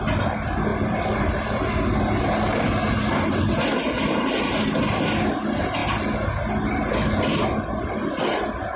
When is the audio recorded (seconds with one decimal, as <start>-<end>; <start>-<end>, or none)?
0.0-8.8